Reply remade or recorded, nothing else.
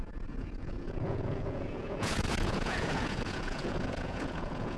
remade